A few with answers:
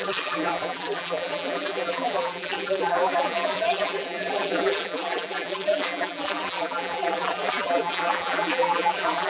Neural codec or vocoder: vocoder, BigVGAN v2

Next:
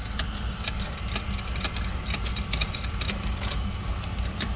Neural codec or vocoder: vocoder, BigVGAN v2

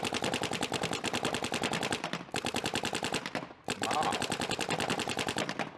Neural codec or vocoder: vocoder, BigVGAN v2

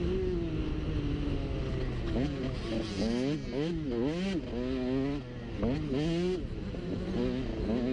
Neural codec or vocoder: none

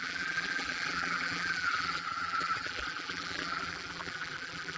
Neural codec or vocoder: vocoder, BigVGAN v2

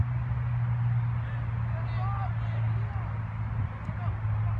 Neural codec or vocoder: none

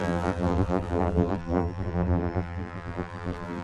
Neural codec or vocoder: vocoder, BigVGAN v2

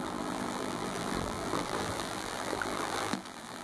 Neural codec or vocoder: vocoder, BigVGAN v2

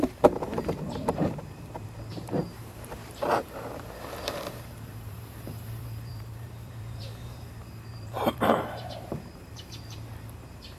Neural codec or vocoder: vocoder, BigVGAN v2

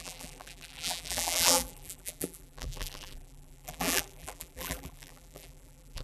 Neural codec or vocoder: vocoder, BigVGAN v2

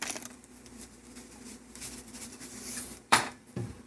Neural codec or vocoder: vocoder, BigVGAN v2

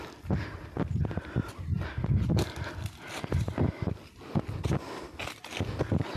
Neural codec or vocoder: none